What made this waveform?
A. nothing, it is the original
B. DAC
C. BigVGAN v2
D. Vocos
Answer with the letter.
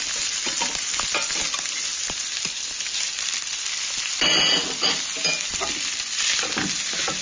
A